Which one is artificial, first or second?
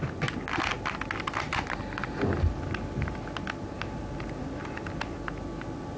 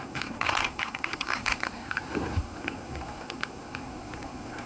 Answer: second